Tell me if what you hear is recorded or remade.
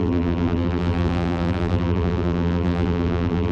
remade